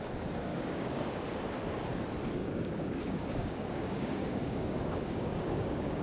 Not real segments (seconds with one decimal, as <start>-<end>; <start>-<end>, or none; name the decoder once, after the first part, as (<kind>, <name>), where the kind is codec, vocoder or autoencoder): 0.5-1.2 (codec, DAC); 2.4-6.0